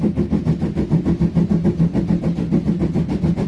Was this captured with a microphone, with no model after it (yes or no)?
yes